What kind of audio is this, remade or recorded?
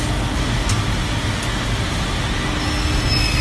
recorded